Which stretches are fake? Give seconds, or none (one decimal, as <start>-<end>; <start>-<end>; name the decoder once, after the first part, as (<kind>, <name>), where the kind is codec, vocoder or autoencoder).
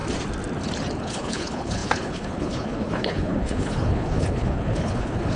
1.0-5.4 (codec, HILCodec)